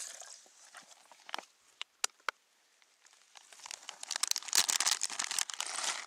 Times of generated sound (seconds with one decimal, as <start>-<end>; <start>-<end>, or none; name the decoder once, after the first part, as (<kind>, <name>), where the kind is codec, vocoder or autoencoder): none